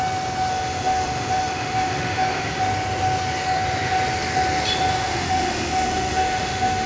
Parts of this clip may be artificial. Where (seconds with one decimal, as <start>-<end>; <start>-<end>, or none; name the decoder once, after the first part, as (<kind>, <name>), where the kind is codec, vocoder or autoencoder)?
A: 0.5-2.6 (autoencoder, DAC-VAE); 4.9-6.9